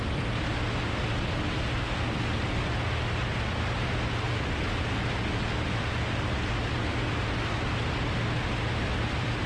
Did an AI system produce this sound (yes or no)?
no